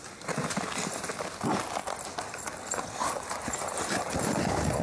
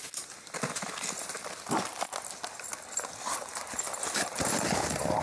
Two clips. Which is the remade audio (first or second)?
second